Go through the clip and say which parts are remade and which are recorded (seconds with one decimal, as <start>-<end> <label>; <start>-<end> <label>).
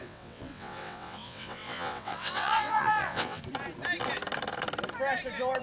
0.0-3.4 remade; 3.4-5.6 recorded